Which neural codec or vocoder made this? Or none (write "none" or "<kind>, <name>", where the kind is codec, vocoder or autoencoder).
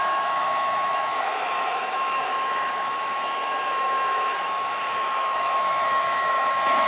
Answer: autoencoder, DAC-VAE